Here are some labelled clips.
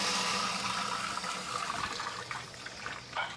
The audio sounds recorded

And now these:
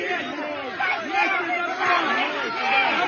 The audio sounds recorded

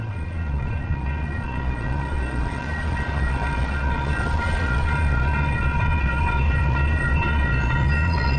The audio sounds remade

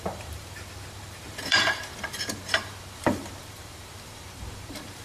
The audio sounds remade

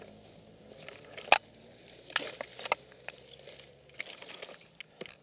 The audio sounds recorded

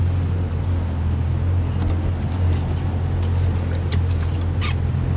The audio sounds recorded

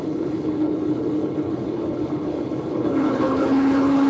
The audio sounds remade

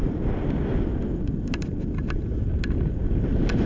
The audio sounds recorded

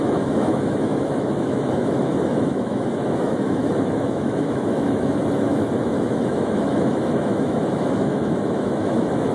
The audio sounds remade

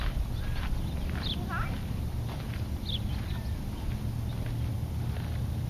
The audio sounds recorded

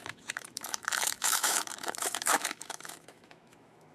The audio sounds remade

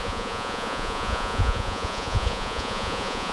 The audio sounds remade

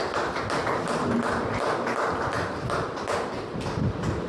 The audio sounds recorded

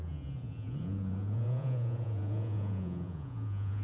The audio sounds remade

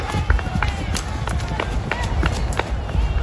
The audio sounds recorded